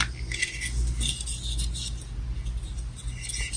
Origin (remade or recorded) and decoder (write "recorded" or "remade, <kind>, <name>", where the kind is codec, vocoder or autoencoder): recorded